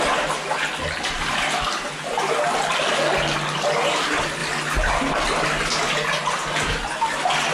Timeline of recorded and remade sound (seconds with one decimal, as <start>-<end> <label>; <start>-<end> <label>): 0.0-7.5 recorded